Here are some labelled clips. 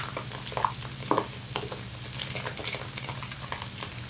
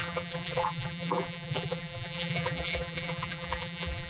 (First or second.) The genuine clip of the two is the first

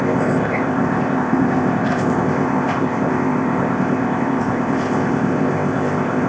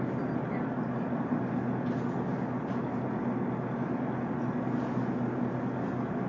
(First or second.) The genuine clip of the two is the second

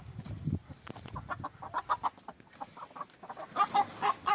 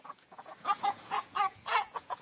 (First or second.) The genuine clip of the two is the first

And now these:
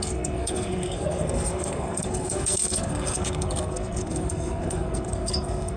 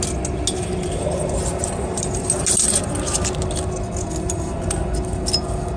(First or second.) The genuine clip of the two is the second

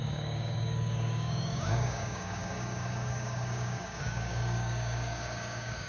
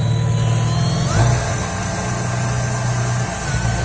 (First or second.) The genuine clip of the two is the second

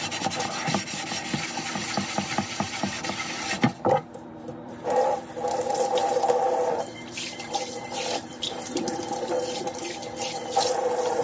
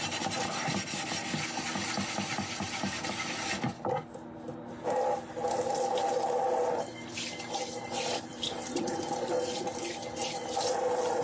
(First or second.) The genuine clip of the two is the second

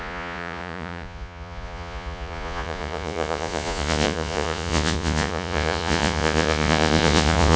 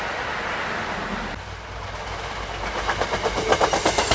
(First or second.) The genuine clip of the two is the second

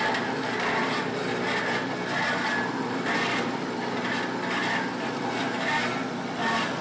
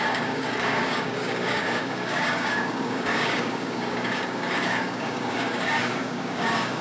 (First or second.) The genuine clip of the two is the first